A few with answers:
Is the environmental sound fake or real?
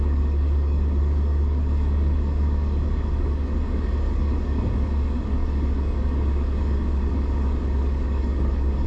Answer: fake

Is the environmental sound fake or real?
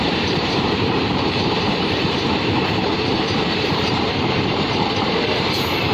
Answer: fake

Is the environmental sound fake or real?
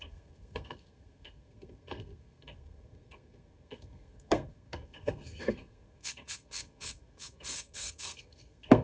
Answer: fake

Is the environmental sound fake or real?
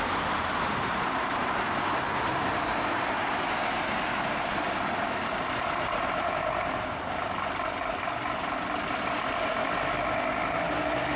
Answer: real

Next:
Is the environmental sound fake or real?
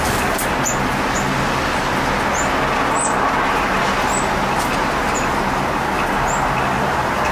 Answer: real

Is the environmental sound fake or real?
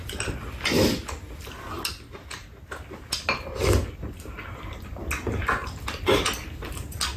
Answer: real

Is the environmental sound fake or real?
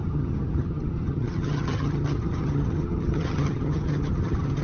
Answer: fake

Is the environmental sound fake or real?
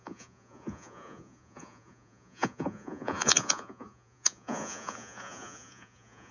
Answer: fake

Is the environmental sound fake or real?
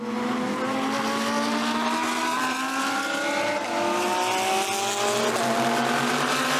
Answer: real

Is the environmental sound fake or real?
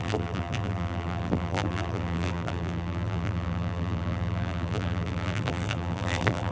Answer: fake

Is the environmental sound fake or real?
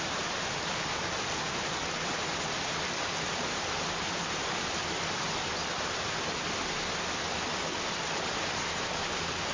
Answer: real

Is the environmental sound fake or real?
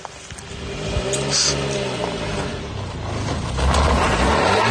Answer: real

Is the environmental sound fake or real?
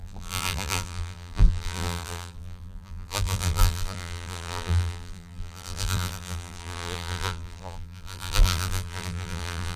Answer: fake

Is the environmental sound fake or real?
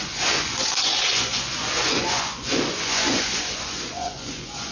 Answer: fake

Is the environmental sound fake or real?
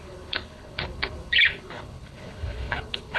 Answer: fake